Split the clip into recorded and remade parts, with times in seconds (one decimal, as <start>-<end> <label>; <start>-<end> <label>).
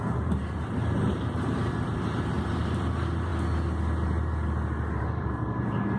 0.0-1.6 remade; 1.6-2.4 recorded; 2.4-3.3 remade; 3.3-5.0 recorded; 5.0-6.0 remade